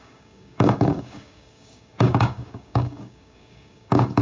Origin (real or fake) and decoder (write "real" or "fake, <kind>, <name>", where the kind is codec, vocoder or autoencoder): fake, codec, DAC